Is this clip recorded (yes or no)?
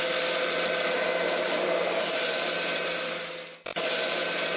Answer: yes